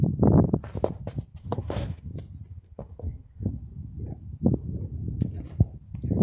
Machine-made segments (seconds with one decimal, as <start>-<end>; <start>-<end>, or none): 1.4-2.1; 2.5-3.6